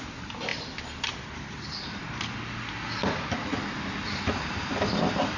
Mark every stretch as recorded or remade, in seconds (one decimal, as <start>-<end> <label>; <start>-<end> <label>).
0.0-5.4 recorded